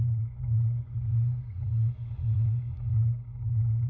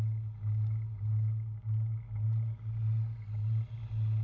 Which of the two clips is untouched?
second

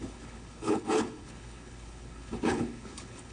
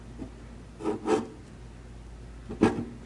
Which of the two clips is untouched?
second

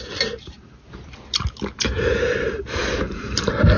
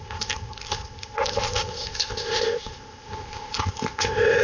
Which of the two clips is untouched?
first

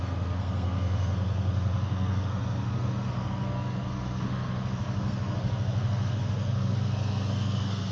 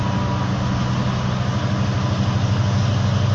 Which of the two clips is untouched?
second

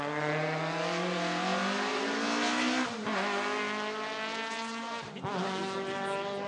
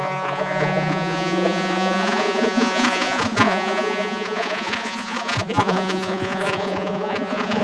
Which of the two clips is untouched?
first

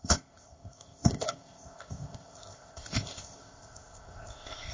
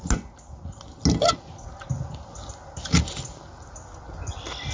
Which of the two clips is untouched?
second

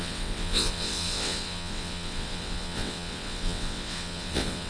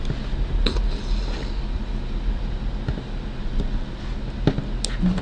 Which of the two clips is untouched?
second